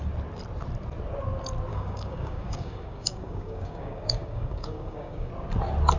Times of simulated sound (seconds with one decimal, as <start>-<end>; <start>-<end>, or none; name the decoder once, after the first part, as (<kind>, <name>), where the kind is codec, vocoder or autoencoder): 1.7-5.3 (codec, DAC)